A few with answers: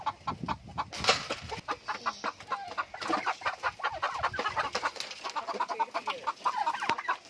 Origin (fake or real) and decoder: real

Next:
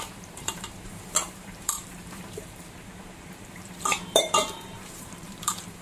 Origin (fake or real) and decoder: fake, vocoder, BigVGAN v2